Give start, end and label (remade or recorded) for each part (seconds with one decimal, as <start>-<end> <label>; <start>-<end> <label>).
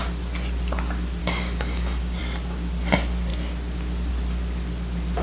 0.0-1.2 recorded; 1.2-2.2 remade; 2.2-5.2 recorded